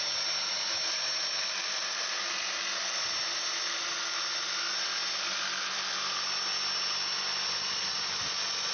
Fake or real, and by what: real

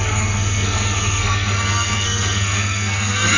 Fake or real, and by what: fake, codec, SNAC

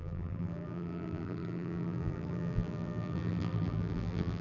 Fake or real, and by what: fake, vocoder, BigVGAN v2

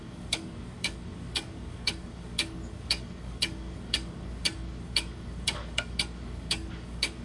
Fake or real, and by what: fake, codec, DAC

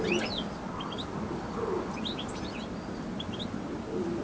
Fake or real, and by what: real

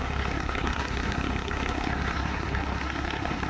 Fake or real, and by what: fake, codec, SNAC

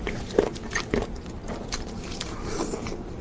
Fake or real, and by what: fake, vocoder, BigVGAN v2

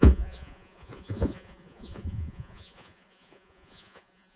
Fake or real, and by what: fake, vocoder, Vocos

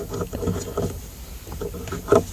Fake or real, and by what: real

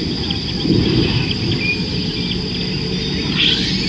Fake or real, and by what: real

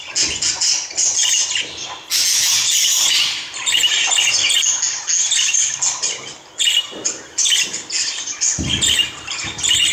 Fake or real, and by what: real